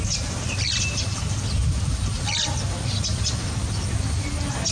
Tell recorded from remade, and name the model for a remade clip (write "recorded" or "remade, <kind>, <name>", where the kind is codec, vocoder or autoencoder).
recorded